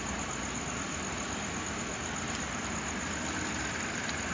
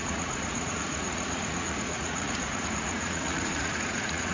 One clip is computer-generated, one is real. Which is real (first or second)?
first